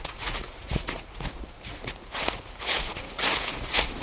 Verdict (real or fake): fake